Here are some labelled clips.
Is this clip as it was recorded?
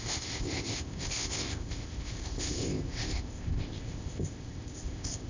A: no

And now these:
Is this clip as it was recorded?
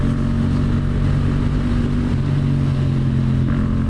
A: yes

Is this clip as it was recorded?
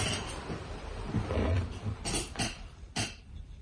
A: no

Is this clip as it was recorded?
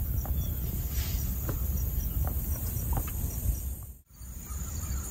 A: yes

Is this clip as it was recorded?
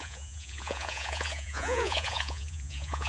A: no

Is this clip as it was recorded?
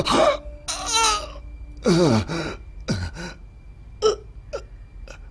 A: yes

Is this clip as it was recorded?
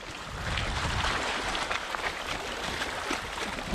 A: yes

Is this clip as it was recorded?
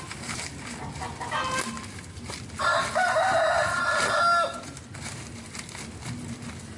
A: yes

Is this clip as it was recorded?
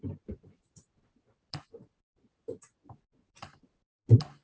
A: no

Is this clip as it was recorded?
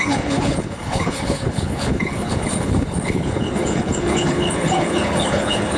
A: no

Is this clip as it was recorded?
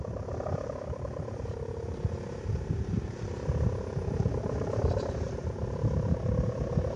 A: yes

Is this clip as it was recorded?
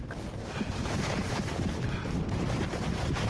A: yes